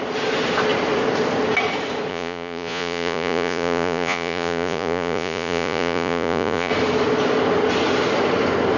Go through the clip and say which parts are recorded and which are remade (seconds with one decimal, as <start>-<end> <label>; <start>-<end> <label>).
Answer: 0.0-2.1 recorded; 2.1-6.7 remade; 6.7-8.8 recorded

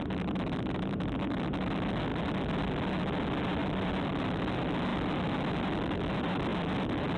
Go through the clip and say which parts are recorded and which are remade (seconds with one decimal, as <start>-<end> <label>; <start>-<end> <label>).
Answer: 0.0-7.2 recorded

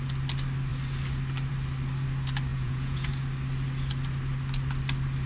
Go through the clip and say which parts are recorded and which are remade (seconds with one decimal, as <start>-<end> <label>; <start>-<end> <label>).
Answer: 0.0-2.5 recorded; 2.5-3.1 remade; 3.1-5.3 recorded

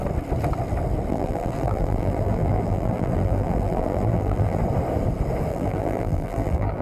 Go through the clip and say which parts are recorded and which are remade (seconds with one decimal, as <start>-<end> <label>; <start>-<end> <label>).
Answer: 0.0-1.1 recorded; 1.1-4.6 remade; 4.6-5.5 recorded; 5.5-6.8 remade

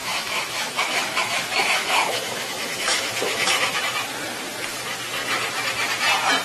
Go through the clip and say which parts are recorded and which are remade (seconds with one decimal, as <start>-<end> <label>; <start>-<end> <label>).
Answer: 0.0-3.8 remade; 3.8-6.4 recorded

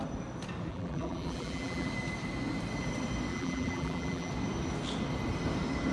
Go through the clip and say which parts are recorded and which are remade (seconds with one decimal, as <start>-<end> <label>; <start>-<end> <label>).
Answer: 0.0-0.7 recorded; 0.7-1.9 remade; 1.9-3.3 recorded; 3.3-4.3 remade; 4.3-5.9 recorded

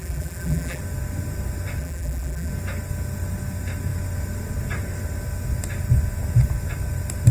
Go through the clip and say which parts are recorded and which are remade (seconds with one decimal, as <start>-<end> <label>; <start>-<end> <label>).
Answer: 0.0-0.8 remade; 0.8-1.8 recorded; 1.8-2.5 remade; 2.5-7.3 recorded